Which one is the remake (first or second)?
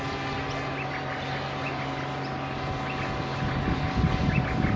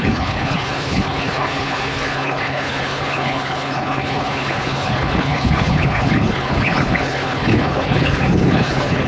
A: second